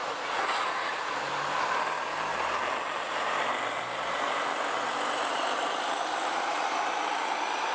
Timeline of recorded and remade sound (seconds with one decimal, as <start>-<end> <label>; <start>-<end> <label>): 0.0-1.2 remade; 1.2-6.2 recorded; 6.2-6.7 remade; 6.7-7.7 recorded